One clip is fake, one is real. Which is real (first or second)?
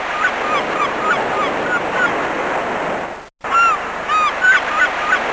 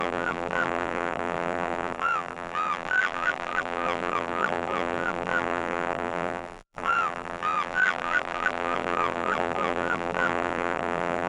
first